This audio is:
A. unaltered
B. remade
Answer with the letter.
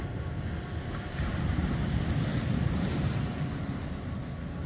A